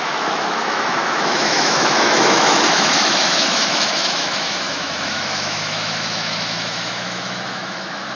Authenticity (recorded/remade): remade